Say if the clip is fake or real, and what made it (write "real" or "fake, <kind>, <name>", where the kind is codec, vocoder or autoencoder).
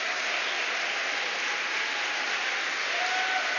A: real